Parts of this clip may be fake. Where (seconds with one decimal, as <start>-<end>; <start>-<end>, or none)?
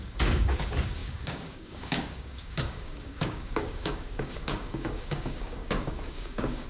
0.0-6.7